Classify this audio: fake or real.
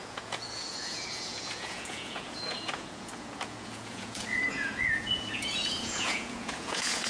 fake